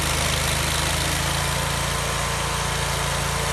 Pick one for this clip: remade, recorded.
recorded